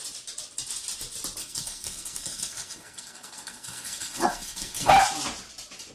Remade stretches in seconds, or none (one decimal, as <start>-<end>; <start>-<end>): 1.4-4.9